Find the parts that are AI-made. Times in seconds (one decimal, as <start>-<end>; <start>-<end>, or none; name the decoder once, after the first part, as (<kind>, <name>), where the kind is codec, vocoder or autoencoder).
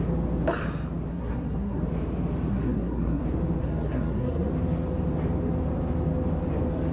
1.1-1.8 (codec, SNAC); 2.5-3.2; 3.6-4.5